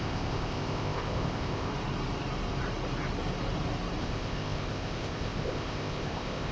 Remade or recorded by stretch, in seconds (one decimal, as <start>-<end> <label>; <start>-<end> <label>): 0.0-1.7 remade; 1.7-4.0 recorded; 4.0-6.5 remade